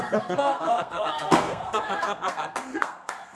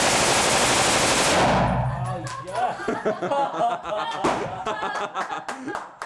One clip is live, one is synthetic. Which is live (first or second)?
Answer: second